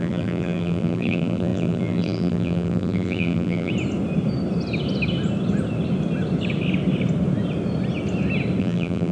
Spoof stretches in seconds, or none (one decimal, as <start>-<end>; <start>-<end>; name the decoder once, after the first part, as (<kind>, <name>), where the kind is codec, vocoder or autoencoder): 0.0-3.7 (vocoder, BigVGAN v2); 8.6-9.1